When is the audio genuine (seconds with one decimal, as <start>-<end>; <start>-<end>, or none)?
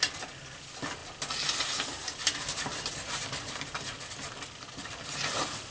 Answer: 0.0-5.7